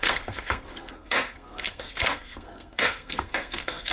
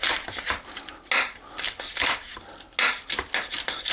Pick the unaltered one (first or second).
second